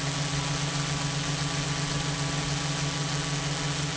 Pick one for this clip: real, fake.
real